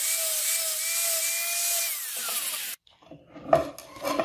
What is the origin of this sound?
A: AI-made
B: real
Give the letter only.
B